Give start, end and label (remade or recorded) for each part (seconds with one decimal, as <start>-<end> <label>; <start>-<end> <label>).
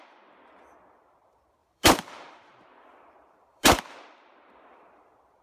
0.0-1.6 recorded; 1.6-3.8 remade; 3.8-5.4 recorded